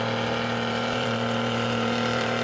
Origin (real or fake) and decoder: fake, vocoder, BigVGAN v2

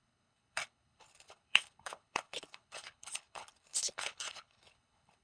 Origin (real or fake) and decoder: fake, codec, HILCodec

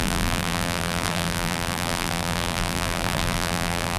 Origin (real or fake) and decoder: fake, vocoder, BigVGAN v2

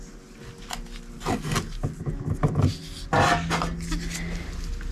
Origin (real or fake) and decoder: real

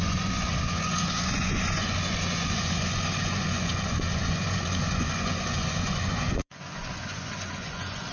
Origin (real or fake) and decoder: fake, vocoder, Vocos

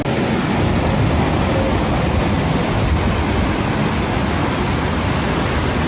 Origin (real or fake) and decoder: real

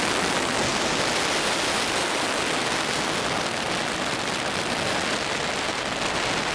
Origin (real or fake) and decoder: real